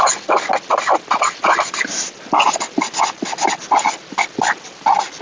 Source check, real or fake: real